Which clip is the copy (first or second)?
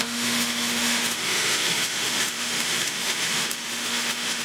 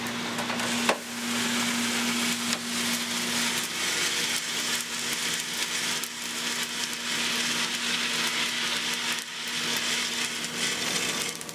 first